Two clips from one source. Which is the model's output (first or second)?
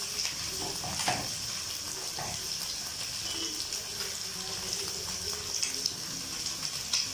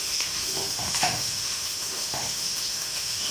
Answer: second